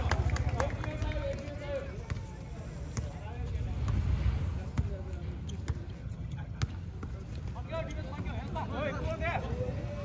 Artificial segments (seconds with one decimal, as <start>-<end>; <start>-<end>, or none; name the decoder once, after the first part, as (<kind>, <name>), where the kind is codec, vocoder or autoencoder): 6.0-6.6 (vocoder, HiFi-GAN)